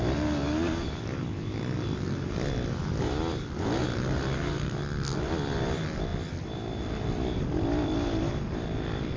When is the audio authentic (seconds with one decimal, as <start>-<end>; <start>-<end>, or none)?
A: 0.0-9.2